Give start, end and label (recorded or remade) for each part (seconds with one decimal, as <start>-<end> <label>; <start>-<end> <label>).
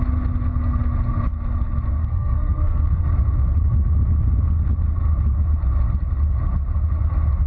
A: 0.0-2.0 recorded; 2.0-3.0 remade; 3.0-7.5 recorded